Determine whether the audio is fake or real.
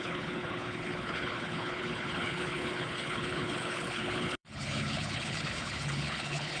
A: fake